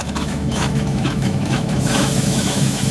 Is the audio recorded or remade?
remade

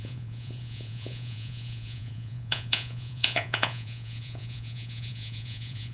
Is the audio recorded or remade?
remade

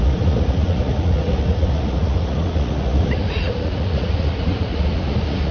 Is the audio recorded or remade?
remade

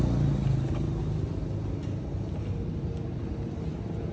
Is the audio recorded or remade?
recorded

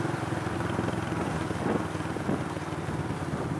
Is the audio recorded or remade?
recorded